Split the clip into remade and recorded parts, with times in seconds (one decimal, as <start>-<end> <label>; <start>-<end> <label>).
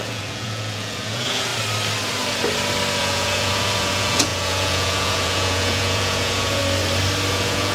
0.0-1.5 remade; 1.5-3.0 recorded; 3.0-6.6 remade; 6.6-7.3 recorded; 7.3-7.7 remade